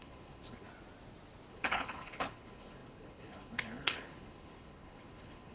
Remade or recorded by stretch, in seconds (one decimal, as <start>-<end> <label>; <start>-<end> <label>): 0.0-0.7 remade; 0.7-1.5 recorded; 1.5-5.5 remade